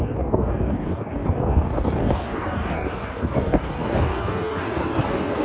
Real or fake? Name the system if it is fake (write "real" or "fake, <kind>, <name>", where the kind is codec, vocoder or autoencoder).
fake, codec, DAC